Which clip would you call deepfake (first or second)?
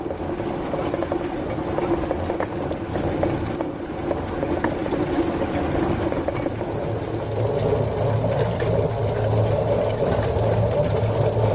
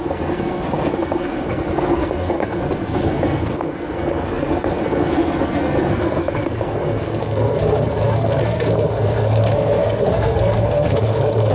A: second